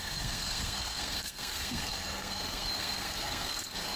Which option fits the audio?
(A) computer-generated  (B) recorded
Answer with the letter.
A